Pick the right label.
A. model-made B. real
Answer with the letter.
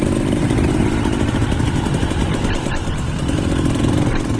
A